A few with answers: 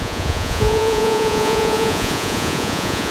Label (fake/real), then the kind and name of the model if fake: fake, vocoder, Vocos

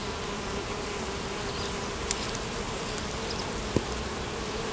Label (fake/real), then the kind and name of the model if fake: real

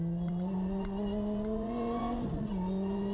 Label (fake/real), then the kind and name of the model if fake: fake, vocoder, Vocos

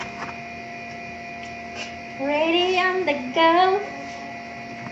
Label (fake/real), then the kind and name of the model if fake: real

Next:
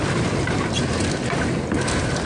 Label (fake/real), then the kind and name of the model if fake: real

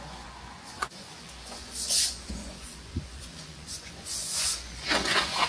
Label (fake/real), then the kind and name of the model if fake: fake, vocoder, Vocos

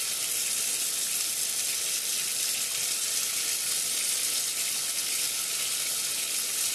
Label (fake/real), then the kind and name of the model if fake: real